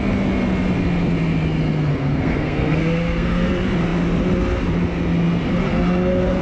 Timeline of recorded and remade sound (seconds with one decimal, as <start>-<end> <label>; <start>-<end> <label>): 0.0-1.9 recorded; 1.9-3.5 remade; 3.5-6.4 recorded